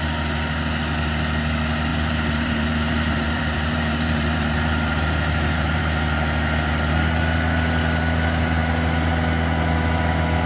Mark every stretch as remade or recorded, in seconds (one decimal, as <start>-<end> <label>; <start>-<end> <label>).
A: 0.0-1.9 recorded; 1.9-5.8 remade; 5.8-10.5 recorded